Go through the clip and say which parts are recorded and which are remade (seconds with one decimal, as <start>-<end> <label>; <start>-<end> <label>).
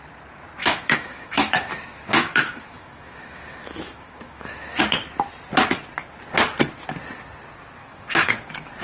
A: 0.0-0.6 recorded; 0.6-4.8 remade; 4.8-7.8 recorded; 7.8-8.3 remade; 8.3-8.8 recorded